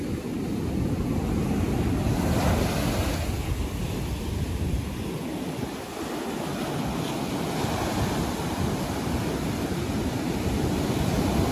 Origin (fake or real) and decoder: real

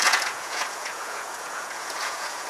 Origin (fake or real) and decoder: fake, vocoder, Vocos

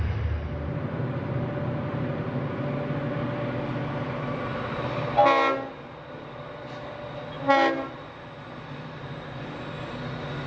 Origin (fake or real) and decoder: real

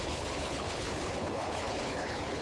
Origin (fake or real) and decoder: fake, codec, HILCodec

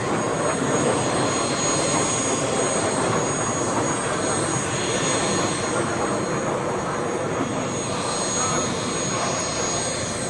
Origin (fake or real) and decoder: real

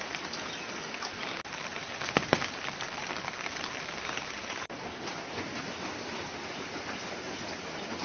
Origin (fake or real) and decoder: real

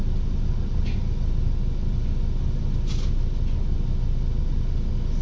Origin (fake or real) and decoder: real